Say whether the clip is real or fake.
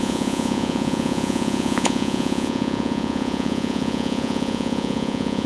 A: fake